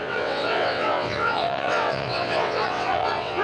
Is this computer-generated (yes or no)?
yes